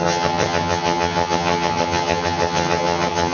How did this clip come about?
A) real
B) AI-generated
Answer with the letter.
B